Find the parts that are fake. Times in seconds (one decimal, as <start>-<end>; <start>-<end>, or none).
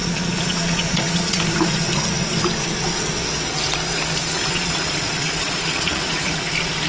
0.0-1.4; 4.2-6.3